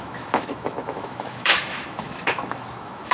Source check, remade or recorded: remade